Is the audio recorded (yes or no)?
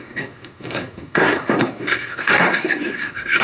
no